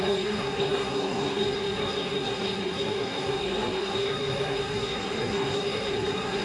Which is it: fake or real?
fake